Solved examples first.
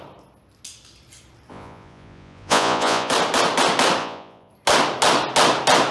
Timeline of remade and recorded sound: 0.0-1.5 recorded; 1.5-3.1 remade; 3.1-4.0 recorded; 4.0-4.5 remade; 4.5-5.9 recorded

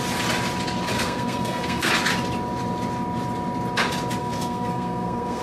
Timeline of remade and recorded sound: 0.0-0.9 recorded; 0.9-1.9 remade; 1.9-4.2 recorded; 4.2-5.4 remade